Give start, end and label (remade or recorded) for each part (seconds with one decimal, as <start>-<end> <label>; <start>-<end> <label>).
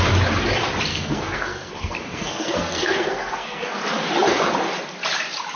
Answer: 0.0-0.9 recorded; 0.9-3.8 remade; 3.8-5.6 recorded